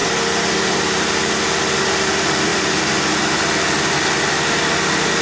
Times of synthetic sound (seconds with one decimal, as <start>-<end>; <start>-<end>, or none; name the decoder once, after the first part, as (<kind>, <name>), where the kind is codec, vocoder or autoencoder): 0.0-1.1 (vocoder, BigVGAN v2); 2.5-3.4